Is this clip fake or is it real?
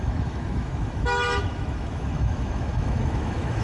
fake